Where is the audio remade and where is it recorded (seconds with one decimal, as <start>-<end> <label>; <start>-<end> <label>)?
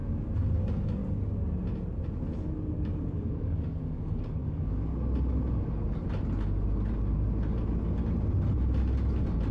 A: 0.0-0.6 recorded; 0.6-1.0 remade; 1.0-2.7 recorded; 2.7-4.9 remade; 4.9-9.5 recorded